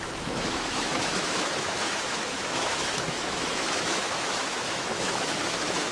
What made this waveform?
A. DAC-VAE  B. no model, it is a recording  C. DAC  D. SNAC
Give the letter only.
A